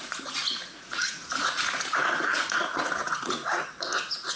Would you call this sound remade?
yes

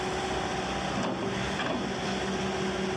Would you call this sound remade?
no